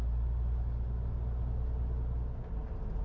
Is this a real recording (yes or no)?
yes